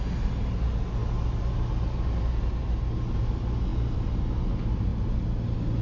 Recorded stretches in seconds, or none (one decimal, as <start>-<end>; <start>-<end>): 0.0-5.8